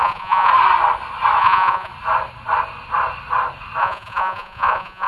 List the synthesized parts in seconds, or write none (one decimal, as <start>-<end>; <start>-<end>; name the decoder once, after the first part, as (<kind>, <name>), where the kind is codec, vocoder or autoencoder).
0.0-0.5 (vocoder, Vocos); 1.4-1.9; 3.8-5.1